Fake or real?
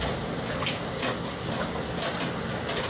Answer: real